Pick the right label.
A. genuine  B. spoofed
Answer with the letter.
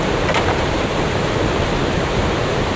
B